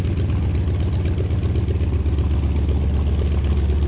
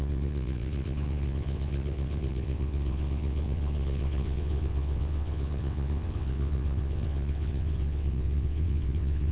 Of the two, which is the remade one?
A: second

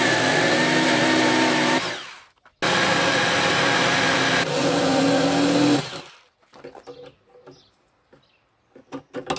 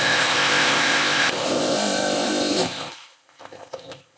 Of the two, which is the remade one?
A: second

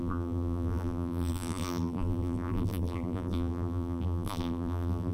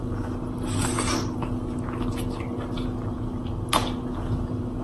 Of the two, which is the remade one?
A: first